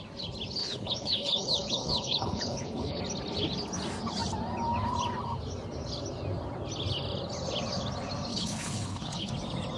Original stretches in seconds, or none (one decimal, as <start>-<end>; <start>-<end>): 0.0-0.6; 3.0-8.3; 9.3-9.8